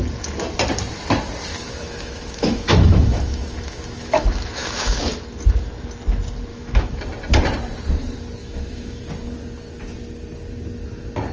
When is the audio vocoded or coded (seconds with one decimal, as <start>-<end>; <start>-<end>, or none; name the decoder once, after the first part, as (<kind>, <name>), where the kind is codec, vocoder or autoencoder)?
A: 1.5-5.0 (autoencoder, DAC-VAE); 6.5-7.0; 8.4-9.0